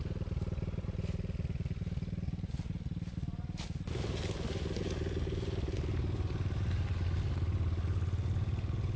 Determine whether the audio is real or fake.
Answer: real